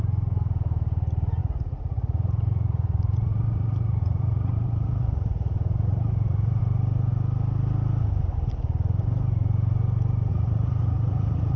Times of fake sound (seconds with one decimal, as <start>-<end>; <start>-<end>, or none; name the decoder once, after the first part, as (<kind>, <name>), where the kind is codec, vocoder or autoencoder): 1.4-6.6 (vocoder, Vocos); 10.3-11.6